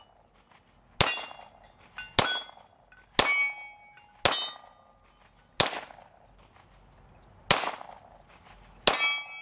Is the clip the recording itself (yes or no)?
yes